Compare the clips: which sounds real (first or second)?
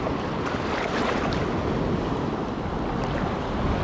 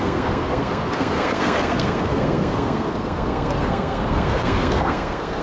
first